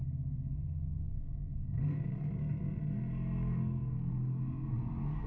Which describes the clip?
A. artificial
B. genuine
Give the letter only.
A